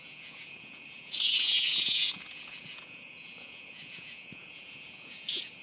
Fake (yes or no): yes